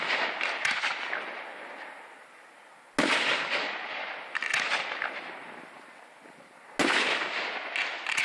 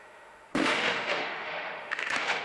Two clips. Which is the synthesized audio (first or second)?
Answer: second